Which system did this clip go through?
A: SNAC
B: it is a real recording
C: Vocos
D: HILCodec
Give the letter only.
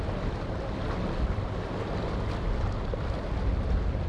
B